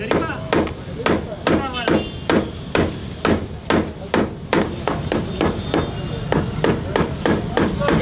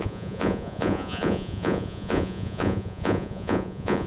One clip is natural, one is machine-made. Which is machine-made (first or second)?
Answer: second